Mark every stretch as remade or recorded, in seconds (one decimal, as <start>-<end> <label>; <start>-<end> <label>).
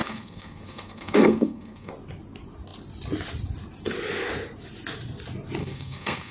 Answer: 0.0-1.9 remade; 1.9-5.6 recorded; 5.6-6.3 remade